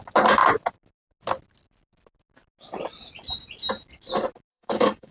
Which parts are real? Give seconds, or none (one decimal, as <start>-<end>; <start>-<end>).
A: 0.0-4.5